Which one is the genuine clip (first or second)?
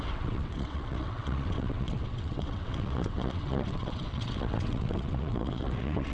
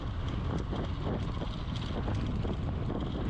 second